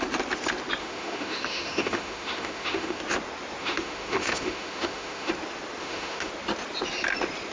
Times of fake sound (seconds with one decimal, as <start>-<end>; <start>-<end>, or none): 0.8-3.0; 3.6-5.3; 5.8-6.3